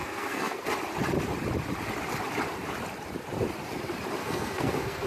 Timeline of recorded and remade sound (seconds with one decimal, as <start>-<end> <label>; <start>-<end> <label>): 0.0-0.7 remade; 0.7-4.2 recorded; 4.2-5.1 remade